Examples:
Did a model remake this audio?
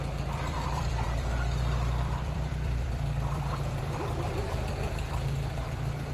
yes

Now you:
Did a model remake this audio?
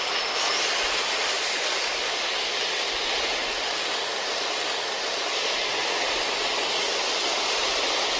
no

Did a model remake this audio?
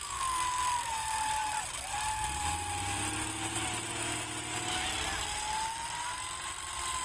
no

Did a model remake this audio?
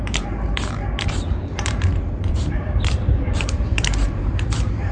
yes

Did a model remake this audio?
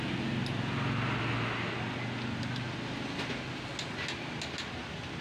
no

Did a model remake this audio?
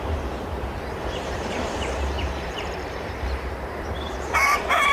yes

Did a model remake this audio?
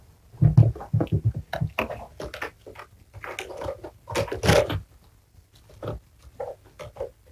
no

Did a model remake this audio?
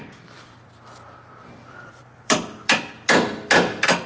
yes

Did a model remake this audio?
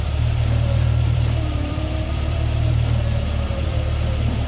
yes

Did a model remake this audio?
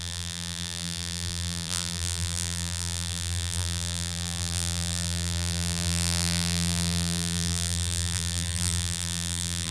yes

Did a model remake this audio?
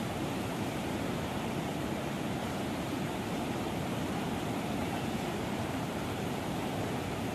yes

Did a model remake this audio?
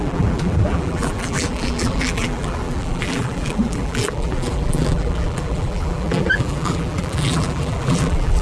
yes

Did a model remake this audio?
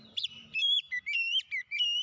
yes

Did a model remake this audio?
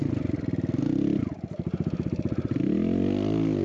no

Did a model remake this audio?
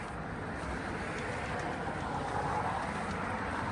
no